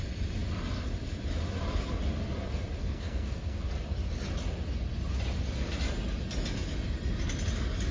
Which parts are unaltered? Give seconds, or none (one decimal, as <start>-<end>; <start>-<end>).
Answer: 0.0-2.8; 3.6-7.9